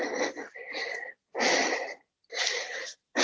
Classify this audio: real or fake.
real